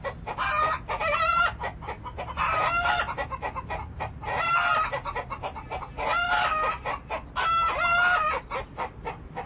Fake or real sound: real